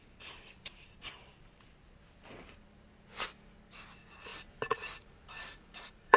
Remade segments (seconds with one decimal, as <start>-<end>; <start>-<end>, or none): 4.3-6.2